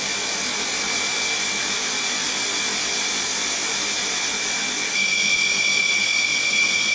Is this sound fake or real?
real